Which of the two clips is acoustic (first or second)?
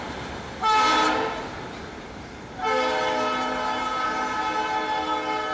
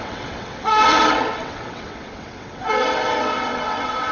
first